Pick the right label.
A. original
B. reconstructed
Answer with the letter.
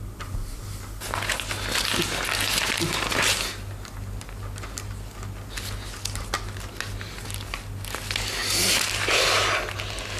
A